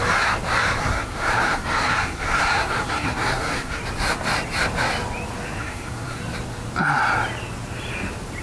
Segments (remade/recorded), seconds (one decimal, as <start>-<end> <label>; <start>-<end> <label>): 0.0-0.8 recorded; 0.8-3.8 remade; 3.8-5.6 recorded; 5.6-6.2 remade; 6.2-8.4 recorded